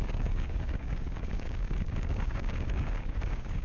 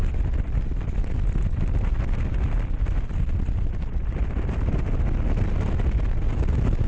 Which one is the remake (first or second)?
first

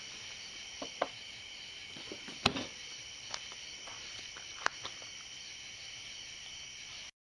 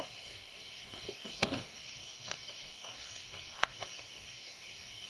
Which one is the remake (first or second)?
second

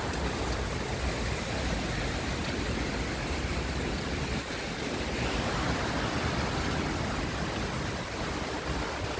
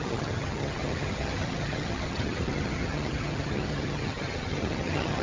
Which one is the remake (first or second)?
second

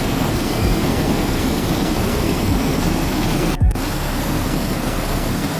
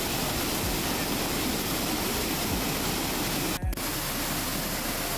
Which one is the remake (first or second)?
first